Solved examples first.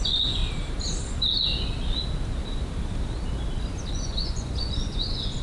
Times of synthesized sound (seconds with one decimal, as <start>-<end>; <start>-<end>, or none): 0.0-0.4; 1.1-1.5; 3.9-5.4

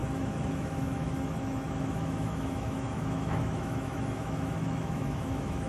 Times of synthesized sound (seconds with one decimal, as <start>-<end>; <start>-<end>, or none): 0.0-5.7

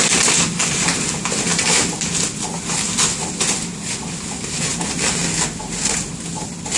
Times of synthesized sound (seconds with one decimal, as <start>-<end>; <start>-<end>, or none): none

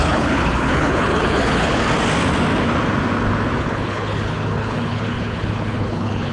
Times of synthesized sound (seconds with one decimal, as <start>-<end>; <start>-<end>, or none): 0.0-1.8; 3.6-6.3

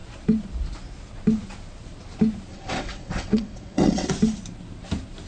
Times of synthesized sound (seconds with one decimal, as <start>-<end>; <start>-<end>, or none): 2.5-4.1